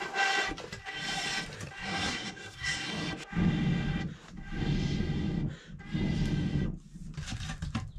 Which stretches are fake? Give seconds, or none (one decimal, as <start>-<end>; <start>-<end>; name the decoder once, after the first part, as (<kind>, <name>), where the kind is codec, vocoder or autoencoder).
1.8-2.9 (codec, SNAC)